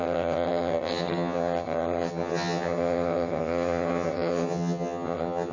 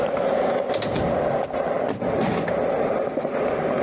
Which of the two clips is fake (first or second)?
first